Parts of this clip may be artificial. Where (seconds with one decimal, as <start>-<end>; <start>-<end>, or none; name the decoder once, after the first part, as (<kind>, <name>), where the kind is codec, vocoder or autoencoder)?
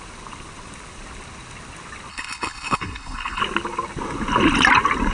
2.1-3.4 (codec, HILCodec)